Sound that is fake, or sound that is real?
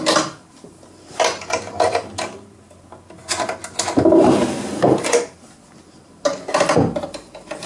real